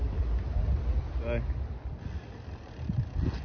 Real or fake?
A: real